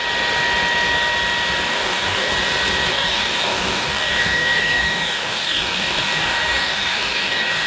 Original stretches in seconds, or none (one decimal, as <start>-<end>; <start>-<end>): 0.0-1.7; 2.3-2.9

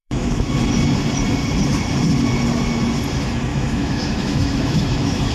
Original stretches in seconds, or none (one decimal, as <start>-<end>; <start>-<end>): 0.5-3.5

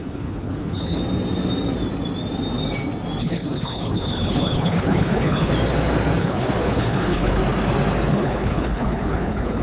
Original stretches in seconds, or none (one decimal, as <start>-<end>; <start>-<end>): 1.0-3.2; 5.5-6.2; 7.4-8.1

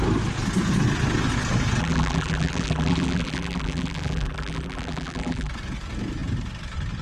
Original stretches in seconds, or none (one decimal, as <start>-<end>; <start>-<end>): 0.0-1.8; 5.5-7.0

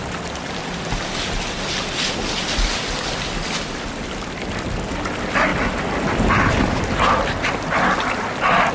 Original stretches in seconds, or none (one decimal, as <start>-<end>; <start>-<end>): 0.0-8.7

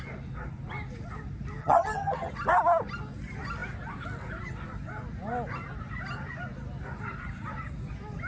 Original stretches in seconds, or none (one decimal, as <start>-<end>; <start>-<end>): 0.0-1.6; 2.3-8.3